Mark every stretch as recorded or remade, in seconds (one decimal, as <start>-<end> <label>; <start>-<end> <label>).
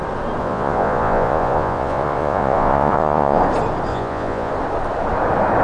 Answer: 0.0-0.4 recorded; 0.4-3.4 remade; 3.4-3.9 recorded; 3.9-4.5 remade; 4.5-5.6 recorded